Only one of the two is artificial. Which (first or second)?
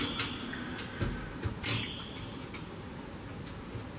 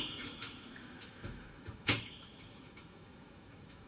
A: second